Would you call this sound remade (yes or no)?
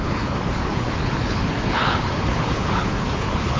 yes